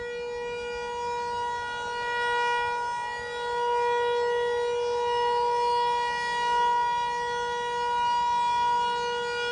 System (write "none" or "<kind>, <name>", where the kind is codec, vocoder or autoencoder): none